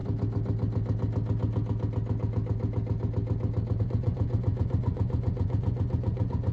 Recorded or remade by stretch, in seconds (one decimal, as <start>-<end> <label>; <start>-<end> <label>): 0.0-3.8 recorded; 3.8-6.5 remade